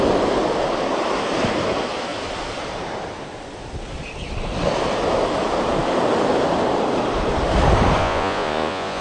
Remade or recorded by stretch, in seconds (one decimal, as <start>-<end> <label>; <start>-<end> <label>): 0.0-8.0 recorded; 8.0-9.0 remade

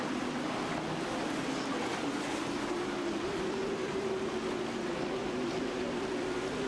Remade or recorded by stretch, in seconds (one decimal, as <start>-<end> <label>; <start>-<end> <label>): 0.0-3.8 recorded; 3.8-4.6 remade; 4.6-5.2 recorded; 5.2-5.8 remade; 5.8-6.7 recorded

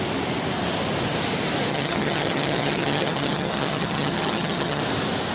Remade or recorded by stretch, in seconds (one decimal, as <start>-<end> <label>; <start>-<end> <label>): 0.0-1.7 recorded; 1.7-4.8 remade; 4.8-5.3 recorded

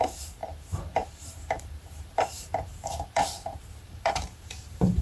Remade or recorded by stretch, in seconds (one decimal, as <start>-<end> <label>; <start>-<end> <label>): 0.0-5.0 remade

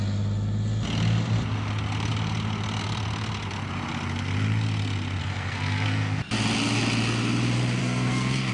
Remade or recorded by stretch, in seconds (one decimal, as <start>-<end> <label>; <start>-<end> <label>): 0.0-5.2 recorded; 5.2-6.2 remade; 6.2-7.8 recorded; 7.8-8.5 remade

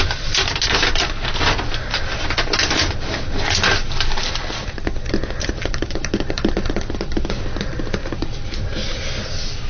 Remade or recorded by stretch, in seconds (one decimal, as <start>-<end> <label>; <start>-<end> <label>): 0.0-9.7 recorded